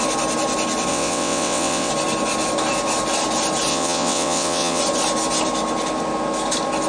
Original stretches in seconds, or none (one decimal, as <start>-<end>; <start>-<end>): 0.0-0.9; 1.9-3.7; 4.8-6.9